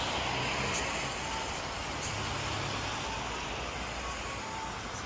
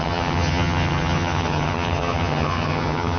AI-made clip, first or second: second